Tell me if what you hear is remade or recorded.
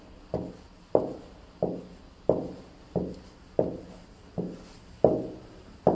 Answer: recorded